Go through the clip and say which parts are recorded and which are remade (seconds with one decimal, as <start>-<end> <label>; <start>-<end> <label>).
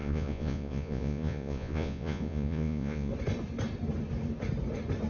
0.0-3.1 remade; 3.1-5.1 recorded